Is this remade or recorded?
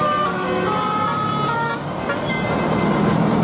recorded